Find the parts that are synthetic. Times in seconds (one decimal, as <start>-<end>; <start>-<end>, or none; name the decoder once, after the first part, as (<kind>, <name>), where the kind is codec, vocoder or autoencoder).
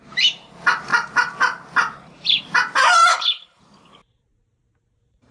3.1-3.6 (codec, HILCodec)